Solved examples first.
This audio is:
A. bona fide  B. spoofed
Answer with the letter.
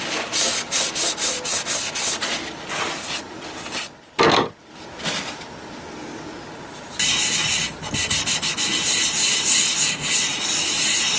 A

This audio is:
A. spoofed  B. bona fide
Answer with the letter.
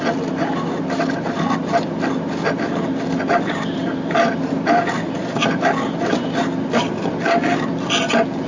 B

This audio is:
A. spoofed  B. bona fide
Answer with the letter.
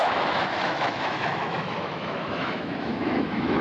A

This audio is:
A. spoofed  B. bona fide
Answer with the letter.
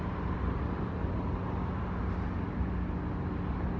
B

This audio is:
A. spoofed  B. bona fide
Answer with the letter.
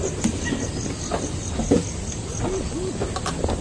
B